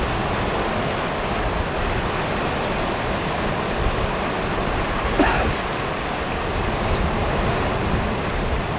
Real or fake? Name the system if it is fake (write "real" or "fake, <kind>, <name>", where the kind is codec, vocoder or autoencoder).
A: real